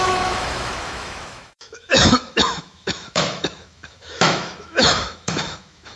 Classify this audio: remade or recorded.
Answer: remade